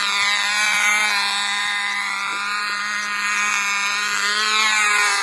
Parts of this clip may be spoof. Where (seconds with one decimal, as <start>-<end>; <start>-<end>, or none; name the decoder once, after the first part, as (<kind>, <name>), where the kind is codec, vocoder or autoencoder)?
0.0-1.0 (vocoder, BigVGAN v2); 1.6-5.2